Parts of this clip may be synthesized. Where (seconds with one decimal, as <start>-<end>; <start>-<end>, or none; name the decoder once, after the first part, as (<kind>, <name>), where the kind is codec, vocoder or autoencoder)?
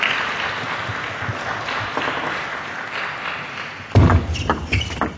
none